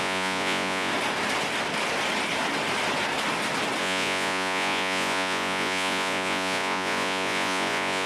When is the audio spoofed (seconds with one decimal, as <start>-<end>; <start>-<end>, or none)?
0.0-0.9; 3.8-8.1